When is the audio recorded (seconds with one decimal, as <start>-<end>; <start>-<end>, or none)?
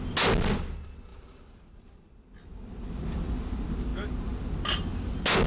0.0-1.1; 3.3-5.5